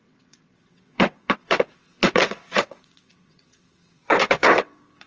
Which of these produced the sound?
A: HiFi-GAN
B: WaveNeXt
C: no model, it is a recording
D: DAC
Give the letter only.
B